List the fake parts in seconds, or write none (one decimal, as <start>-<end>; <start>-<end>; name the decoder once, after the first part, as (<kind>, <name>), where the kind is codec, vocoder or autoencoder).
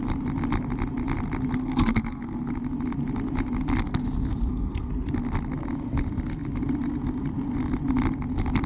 1.5-2.5 (codec, SNAC); 4.3-4.9